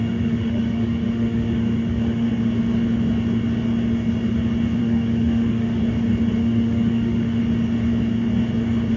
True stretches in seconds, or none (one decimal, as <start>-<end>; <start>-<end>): 2.3-4.8; 5.8-6.4; 7.4-9.0